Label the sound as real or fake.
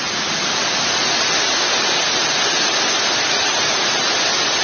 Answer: real